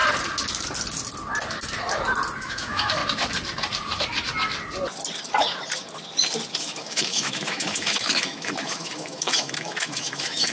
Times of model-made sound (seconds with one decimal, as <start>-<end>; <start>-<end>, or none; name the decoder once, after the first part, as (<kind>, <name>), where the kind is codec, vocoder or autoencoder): 2.4-3.0 (autoencoder, DAC-VAE); 6.6-10.5